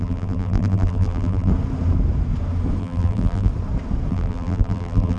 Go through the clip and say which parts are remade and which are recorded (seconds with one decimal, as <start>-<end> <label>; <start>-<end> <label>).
0.0-1.5 remade; 1.5-2.8 recorded; 2.8-3.5 remade; 3.5-4.1 recorded; 4.1-5.2 remade